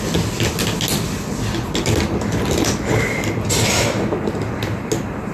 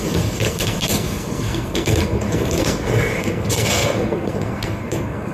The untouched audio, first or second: first